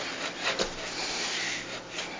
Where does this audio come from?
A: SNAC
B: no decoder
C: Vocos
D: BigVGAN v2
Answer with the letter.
B